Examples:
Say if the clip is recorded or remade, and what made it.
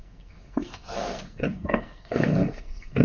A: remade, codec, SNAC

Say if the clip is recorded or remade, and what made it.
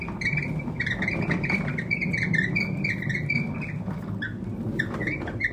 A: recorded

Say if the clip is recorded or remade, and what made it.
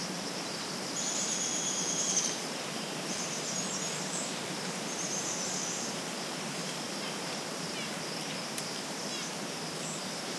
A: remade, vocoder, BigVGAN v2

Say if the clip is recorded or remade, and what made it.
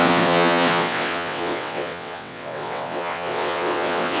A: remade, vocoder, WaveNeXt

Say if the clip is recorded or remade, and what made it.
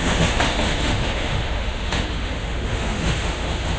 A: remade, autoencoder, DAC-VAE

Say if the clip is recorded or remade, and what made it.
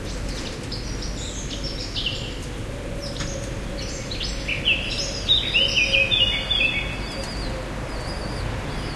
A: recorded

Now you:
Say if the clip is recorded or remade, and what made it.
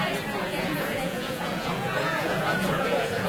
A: remade, vocoder, Vocos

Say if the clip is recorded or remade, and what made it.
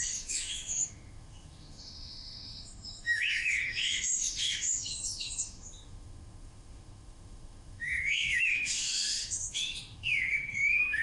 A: remade, autoencoder, DAC-VAE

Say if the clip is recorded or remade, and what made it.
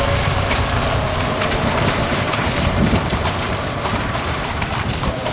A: remade, vocoder, BigVGAN v2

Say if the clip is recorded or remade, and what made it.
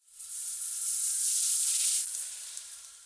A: remade, vocoder, BigVGAN v2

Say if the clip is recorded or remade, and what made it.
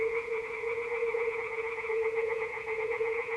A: remade, vocoder, Vocos